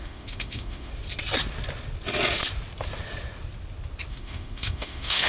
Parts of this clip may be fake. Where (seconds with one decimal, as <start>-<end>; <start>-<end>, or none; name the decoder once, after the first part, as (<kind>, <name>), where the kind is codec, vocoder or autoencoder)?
0.0-0.9 (autoencoder, DAC-VAE); 4.1-5.3